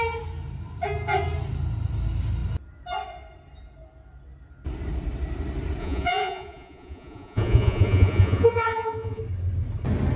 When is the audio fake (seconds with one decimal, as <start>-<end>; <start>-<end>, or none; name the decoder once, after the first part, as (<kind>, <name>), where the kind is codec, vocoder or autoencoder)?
5.8-9.2 (vocoder, Vocos)